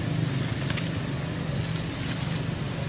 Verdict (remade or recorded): recorded